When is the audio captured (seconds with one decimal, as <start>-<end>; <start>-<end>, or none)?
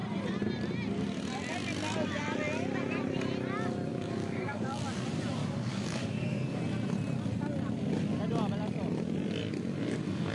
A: 0.0-3.9; 4.8-5.4; 6.6-10.3